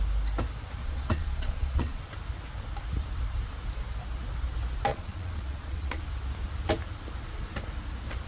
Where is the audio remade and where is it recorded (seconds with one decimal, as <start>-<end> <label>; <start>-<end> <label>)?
0.0-0.8 recorded; 0.8-2.0 remade; 2.0-4.9 recorded; 4.9-6.0 remade; 6.0-8.3 recorded